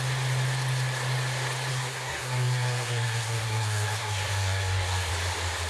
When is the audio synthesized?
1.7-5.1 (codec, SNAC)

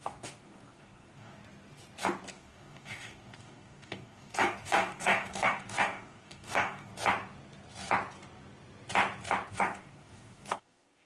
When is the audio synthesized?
0.0-1.4 (codec, DAC); 2.3-6.9; 9.5-11.1

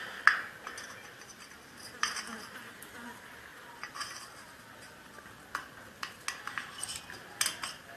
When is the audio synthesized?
none

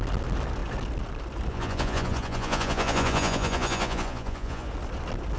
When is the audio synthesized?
1.5-4.7 (vocoder, Vocos)

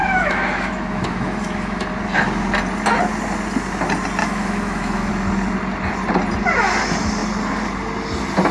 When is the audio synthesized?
0.0-1.9 (autoencoder, DAC-VAE); 4.2-5.1